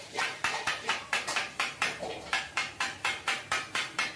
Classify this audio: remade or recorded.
remade